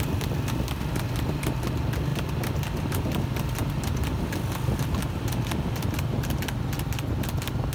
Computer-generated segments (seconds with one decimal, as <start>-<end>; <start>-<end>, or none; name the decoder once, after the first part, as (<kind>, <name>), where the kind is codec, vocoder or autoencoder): none